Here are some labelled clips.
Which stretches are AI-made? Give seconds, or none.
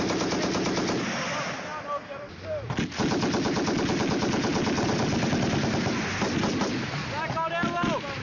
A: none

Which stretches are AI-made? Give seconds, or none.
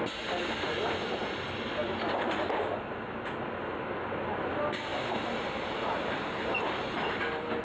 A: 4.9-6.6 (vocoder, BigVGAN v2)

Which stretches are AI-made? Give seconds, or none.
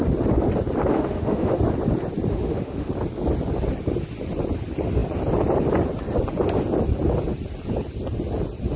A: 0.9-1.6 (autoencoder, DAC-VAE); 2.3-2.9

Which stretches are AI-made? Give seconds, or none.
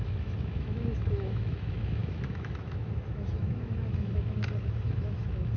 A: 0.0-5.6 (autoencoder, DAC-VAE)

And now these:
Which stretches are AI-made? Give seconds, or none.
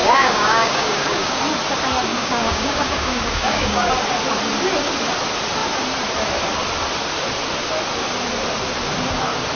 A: 0.0-1.4 (codec, DAC); 2.1-3.9